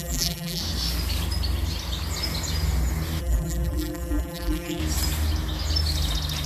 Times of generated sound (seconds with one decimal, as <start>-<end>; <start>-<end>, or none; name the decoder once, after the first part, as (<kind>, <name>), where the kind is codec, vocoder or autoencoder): 0.0-0.6 (vocoder, BigVGAN v2); 3.2-4.8